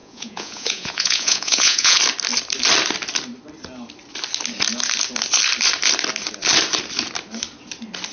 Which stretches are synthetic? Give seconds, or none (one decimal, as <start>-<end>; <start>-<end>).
0.0-2.0